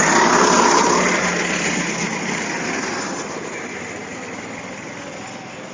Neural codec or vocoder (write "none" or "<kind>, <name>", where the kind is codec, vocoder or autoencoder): none